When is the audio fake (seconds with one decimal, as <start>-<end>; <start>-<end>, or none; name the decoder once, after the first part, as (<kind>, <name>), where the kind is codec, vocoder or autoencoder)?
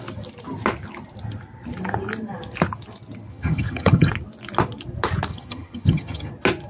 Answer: 3.3-4.1 (vocoder, HiFi-GAN); 5.3-6.3